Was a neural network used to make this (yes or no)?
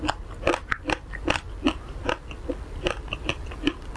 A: yes